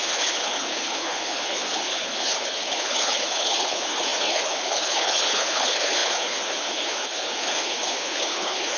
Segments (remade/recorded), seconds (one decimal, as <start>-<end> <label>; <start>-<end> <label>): 0.0-8.8 remade

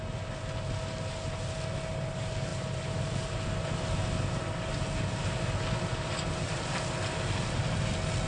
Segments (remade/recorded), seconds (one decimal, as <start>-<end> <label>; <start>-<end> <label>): 0.0-2.5 recorded; 2.5-4.0 remade; 4.0-5.2 recorded; 5.2-6.7 remade; 6.7-8.3 recorded

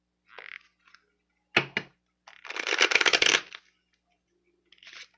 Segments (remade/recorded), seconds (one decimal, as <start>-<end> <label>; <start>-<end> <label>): 0.0-5.2 recorded

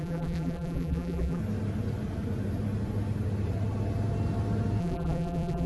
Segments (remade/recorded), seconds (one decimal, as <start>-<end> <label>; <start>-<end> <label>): 0.0-1.4 remade; 1.4-4.8 recorded; 4.8-5.7 remade

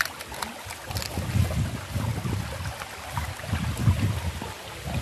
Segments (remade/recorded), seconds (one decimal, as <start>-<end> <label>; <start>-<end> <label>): 0.0-5.0 recorded

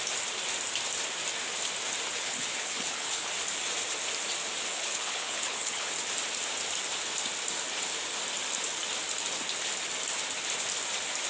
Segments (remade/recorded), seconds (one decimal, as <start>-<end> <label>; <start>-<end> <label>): 0.0-2.1 recorded; 2.1-3.3 remade; 3.3-4.7 recorded; 4.7-5.9 remade; 5.9-11.3 recorded

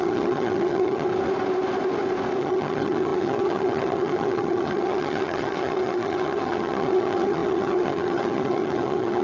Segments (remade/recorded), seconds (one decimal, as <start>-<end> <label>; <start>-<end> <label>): 0.0-1.1 remade; 1.1-2.4 recorded; 2.4-9.2 remade

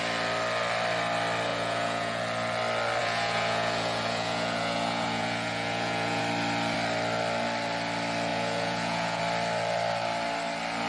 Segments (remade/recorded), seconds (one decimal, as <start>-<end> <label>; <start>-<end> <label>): 0.0-1.5 recorded; 1.5-2.2 remade; 2.2-3.0 recorded; 3.0-6.2 remade; 6.2-8.3 recorded; 8.3-9.2 remade; 9.2-10.9 recorded